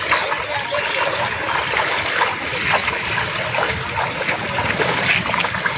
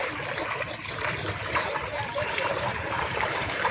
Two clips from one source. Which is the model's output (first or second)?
second